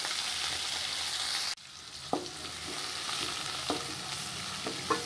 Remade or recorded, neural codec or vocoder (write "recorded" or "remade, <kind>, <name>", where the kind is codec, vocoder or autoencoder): recorded